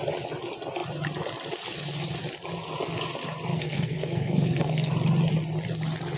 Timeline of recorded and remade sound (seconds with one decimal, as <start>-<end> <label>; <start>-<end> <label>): 0.0-3.5 recorded; 3.5-4.9 remade; 4.9-6.2 recorded